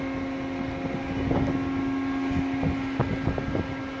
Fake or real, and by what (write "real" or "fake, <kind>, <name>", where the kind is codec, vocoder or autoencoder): real